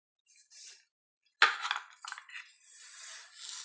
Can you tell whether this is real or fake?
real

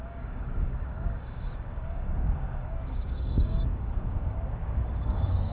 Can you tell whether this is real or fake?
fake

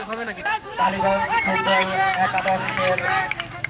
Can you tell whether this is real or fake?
fake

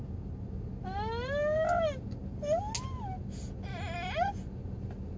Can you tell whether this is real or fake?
real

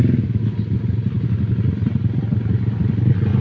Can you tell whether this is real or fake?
real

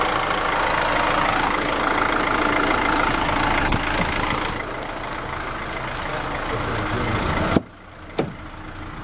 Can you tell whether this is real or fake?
real